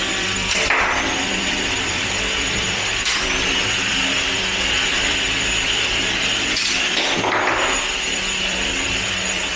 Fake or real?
fake